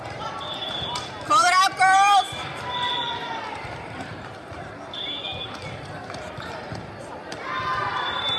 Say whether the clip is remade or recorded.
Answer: remade